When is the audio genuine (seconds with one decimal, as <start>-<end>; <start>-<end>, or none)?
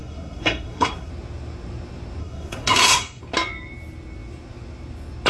1.1-2.2; 3.2-5.3